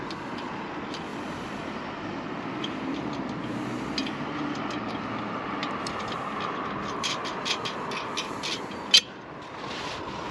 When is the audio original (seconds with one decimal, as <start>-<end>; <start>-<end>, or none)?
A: 0.0-1.1; 3.2-4.0; 4.6-10.3